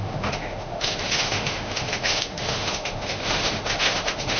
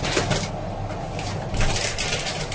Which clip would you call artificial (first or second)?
first